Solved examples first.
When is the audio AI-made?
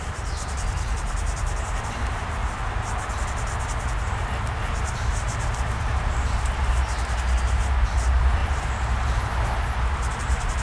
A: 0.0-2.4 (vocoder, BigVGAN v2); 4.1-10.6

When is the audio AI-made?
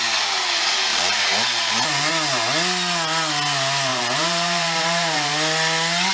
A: 0.9-2.1 (vocoder, BigVGAN v2); 3.9-5.3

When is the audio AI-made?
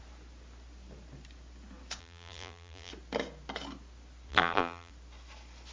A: 2.0-2.9 (vocoder, BigVGAN v2); 4.3-4.9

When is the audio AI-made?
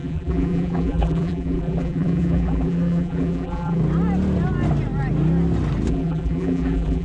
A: 0.0-3.8 (vocoder, BigVGAN v2); 5.9-7.0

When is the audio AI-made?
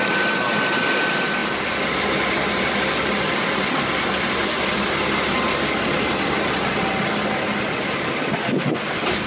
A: none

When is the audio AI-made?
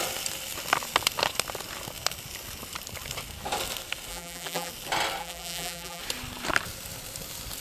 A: 4.1-4.7 (vocoder, BigVGAN v2); 5.2-6.0